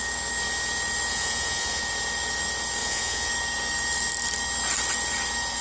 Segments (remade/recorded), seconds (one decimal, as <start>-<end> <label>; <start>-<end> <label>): 0.0-1.1 recorded; 1.1-1.8 remade; 1.8-2.8 recorded; 2.8-3.3 remade; 3.3-5.6 recorded